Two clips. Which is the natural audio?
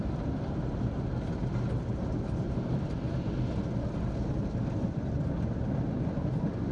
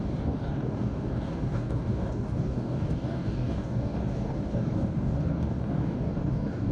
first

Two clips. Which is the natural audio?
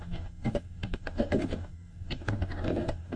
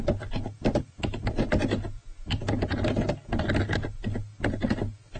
second